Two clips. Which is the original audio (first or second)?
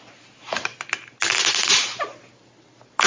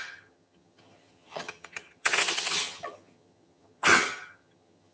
first